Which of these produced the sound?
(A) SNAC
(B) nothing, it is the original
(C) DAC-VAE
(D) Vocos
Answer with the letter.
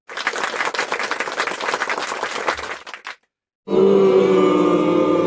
B